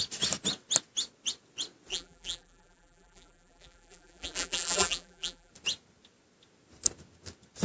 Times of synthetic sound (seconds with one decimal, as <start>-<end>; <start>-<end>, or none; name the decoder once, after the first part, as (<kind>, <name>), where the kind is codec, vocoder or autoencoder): 1.9-5.5 (vocoder, BigVGAN v2)